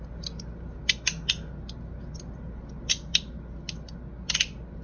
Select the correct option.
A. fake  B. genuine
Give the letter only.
B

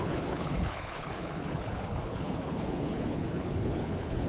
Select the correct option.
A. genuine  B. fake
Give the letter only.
B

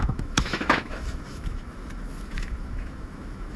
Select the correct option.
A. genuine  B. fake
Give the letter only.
B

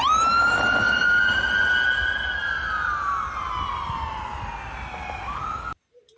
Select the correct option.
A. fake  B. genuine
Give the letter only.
B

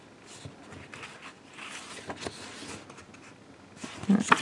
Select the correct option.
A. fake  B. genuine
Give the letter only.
B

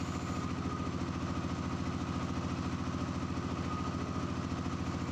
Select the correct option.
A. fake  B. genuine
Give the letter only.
B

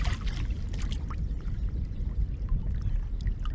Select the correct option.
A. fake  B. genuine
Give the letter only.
B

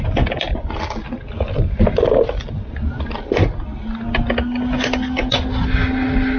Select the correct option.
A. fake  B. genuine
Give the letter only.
B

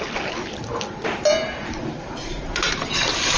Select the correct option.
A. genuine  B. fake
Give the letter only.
A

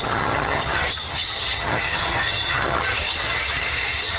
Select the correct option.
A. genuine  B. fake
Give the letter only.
B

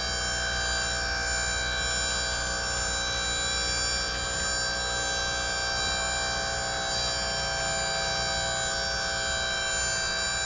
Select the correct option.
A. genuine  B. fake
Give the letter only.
A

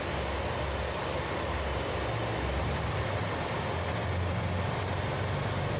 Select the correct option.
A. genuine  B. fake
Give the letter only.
A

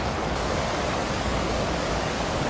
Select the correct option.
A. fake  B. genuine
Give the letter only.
A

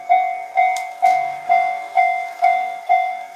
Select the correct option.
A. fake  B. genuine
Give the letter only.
A